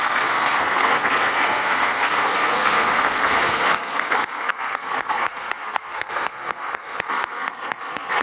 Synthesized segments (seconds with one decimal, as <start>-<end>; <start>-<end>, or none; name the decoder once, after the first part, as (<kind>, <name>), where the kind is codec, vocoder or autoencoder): 0.0-8.2 (codec, SNAC)